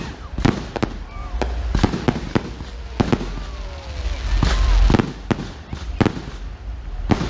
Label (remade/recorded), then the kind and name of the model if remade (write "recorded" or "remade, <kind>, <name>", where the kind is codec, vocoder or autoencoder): recorded